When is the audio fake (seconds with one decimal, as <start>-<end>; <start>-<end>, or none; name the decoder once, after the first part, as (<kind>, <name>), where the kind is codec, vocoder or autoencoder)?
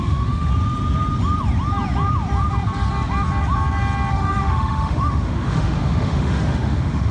0.0-0.5 (autoencoder, DAC-VAE); 4.1-7.1